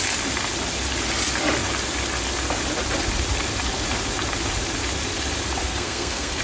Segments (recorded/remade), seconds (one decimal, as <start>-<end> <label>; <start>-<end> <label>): 0.0-5.6 recorded; 5.6-6.4 remade